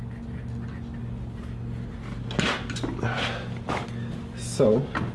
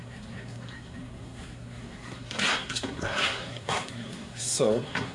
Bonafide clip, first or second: first